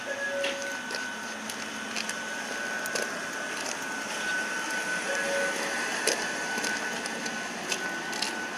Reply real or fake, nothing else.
real